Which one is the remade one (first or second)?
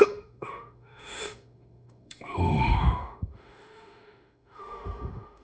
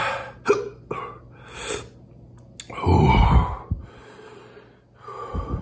first